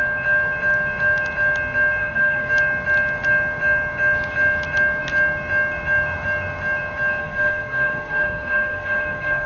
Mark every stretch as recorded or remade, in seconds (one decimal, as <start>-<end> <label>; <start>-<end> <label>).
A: 0.0-2.0 recorded; 2.0-2.5 remade; 2.5-7.2 recorded; 7.2-9.5 remade